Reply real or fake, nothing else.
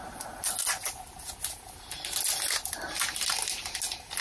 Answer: real